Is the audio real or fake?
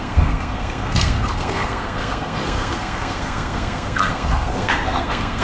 fake